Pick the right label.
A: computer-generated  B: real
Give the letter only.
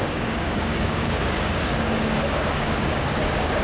A